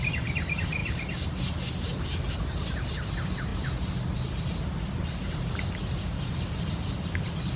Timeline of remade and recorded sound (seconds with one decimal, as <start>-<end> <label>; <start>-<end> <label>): 0.0-7.6 recorded